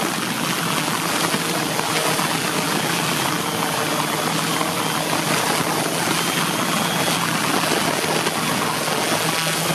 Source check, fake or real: real